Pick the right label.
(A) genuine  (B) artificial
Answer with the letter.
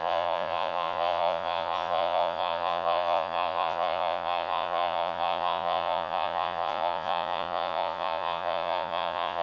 B